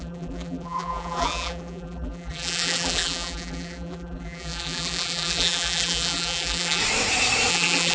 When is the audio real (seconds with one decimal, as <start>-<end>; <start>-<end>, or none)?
6.8-7.5